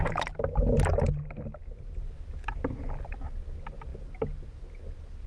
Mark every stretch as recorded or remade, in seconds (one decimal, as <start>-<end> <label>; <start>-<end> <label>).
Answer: 0.0-5.3 recorded